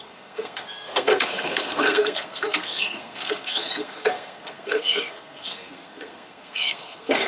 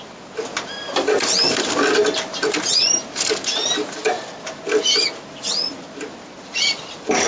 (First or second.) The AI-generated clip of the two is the first